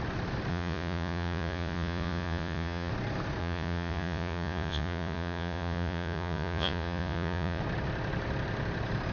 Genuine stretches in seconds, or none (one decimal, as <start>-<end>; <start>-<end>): 0.0-0.5; 2.9-3.4; 7.6-9.1